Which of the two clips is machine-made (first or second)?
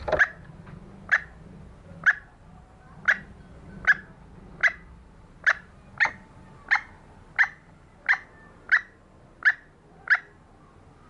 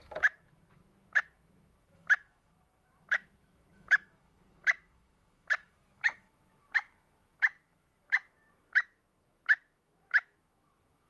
second